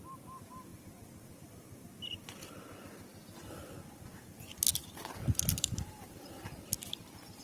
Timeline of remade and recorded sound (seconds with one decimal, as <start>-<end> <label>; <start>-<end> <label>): 0.0-4.5 recorded; 4.5-6.7 remade; 6.7-7.4 recorded